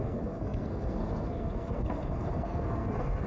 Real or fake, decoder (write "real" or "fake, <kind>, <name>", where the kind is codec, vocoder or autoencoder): fake, codec, SNAC